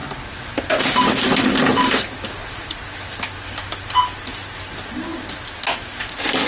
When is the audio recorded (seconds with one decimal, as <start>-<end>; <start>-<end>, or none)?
0.0-6.5